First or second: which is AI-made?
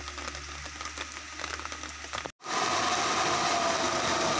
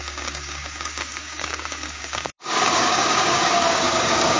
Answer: second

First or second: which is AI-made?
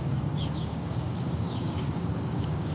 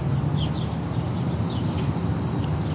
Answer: first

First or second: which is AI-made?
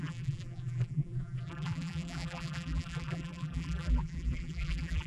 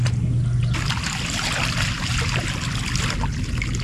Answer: first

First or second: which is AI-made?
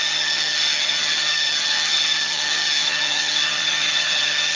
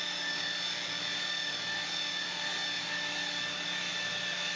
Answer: first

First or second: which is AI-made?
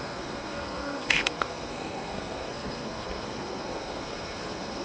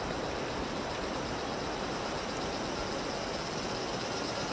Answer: first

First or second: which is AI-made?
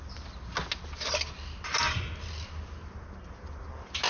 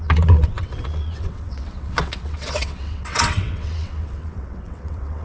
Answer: second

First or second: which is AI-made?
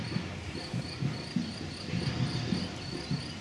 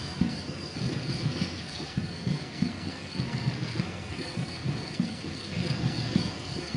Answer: second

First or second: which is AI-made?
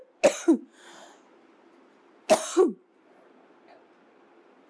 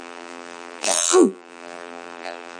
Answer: second